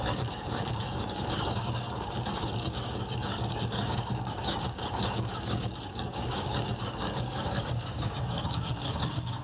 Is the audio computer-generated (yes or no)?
yes